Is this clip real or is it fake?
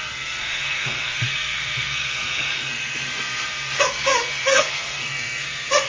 fake